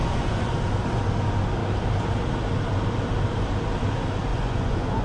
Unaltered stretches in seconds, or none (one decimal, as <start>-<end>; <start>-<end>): 0.5-4.3

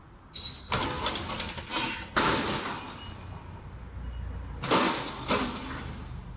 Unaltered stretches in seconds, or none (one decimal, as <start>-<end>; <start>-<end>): 0.0-6.4